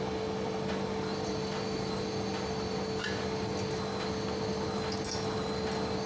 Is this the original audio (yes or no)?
yes